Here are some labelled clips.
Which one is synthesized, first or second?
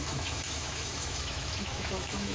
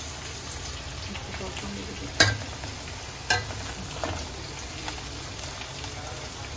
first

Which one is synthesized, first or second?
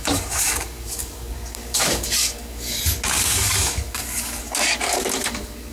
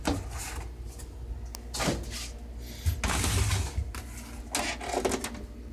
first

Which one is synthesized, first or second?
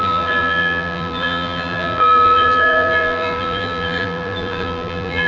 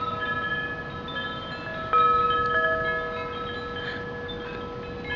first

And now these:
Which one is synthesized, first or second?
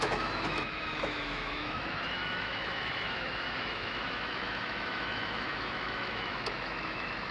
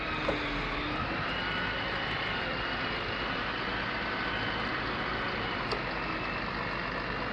first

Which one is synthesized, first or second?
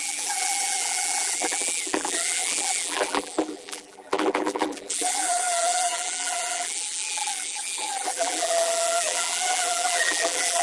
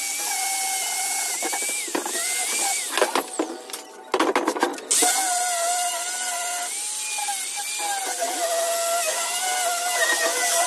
first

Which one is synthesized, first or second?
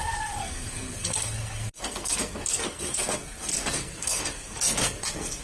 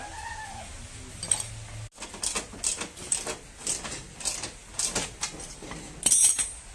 first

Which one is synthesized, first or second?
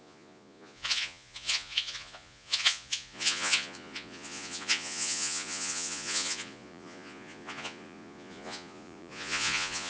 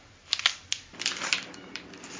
first